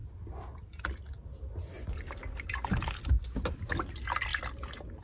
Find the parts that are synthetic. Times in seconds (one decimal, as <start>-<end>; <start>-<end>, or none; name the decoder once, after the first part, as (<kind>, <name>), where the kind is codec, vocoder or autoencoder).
none